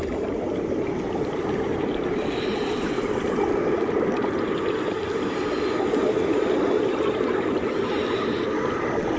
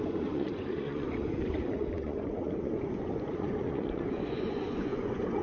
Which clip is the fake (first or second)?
second